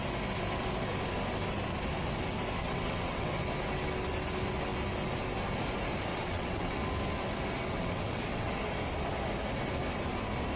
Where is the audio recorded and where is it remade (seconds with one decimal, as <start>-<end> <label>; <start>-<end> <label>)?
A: 0.0-2.6 recorded; 2.6-3.3 remade; 3.3-6.1 recorded; 6.1-6.8 remade; 6.8-7.6 recorded; 7.6-8.5 remade; 8.5-10.6 recorded